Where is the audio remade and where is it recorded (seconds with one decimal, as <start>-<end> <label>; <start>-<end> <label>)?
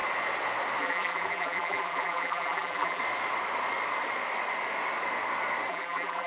0.0-0.8 recorded; 0.8-3.0 remade; 3.0-5.7 recorded; 5.7-6.3 remade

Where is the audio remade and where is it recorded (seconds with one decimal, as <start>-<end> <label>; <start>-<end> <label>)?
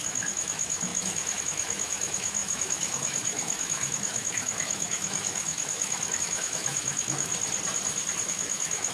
0.0-7.3 remade; 7.3-8.3 recorded; 8.3-8.9 remade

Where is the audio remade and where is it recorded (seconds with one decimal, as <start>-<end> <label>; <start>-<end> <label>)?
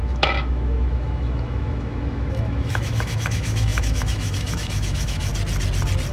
0.0-5.3 remade; 5.3-6.1 recorded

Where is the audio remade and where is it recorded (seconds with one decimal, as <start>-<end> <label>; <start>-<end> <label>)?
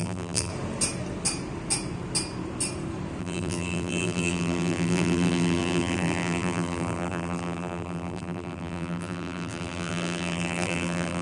0.0-0.5 remade; 0.5-3.2 recorded; 3.2-11.2 remade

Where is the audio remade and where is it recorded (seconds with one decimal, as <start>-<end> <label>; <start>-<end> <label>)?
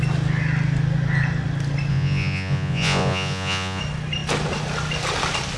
0.0-1.9 recorded; 1.9-3.8 remade; 3.8-5.6 recorded